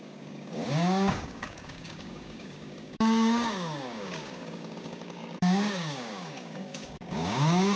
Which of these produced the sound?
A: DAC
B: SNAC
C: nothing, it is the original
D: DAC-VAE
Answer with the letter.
A